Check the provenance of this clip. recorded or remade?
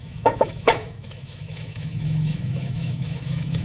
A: remade